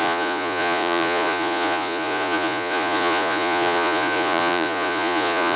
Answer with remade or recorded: remade